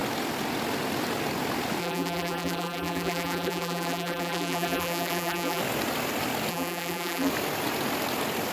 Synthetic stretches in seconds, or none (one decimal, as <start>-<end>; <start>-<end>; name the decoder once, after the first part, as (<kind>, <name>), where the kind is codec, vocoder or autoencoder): 1.8-5.6 (vocoder, BigVGAN v2); 6.5-7.3